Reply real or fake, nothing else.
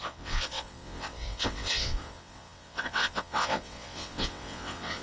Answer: fake